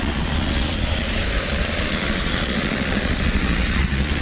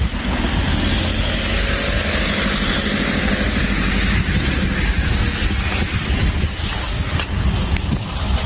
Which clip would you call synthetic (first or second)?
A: first